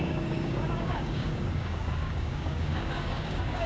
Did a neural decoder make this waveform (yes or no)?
yes